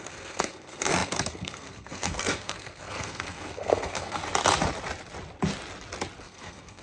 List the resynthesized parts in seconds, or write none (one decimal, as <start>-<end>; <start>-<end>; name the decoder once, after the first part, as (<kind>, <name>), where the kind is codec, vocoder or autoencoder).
0.0-4.2 (codec, SNAC); 6.2-6.8